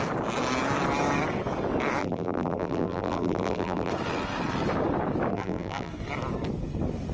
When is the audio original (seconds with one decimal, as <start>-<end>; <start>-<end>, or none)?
0.0-2.0; 3.9-5.3; 5.9-7.1